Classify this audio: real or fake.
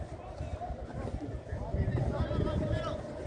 real